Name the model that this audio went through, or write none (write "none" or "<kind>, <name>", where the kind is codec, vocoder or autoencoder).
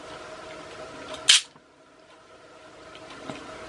none